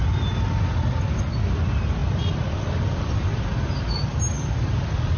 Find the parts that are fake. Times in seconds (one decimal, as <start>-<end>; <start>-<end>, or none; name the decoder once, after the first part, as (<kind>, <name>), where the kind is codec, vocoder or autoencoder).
none